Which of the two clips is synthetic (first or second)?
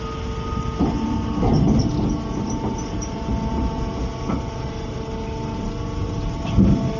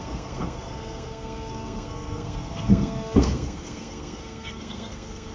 second